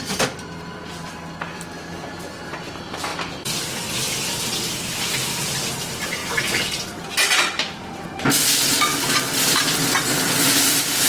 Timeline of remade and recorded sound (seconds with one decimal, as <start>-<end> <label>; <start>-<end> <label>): 0.0-11.1 recorded